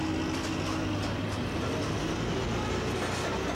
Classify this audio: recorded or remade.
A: recorded